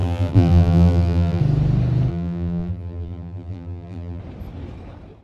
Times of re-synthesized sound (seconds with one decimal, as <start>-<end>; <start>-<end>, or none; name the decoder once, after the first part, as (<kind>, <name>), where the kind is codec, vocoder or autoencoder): 0.0-1.4 (vocoder, BigVGAN v2); 2.1-4.2